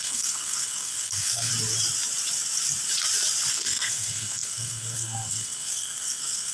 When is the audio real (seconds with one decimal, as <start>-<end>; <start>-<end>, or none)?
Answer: 1.5-3.5